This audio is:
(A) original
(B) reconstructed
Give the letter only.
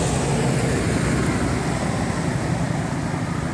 A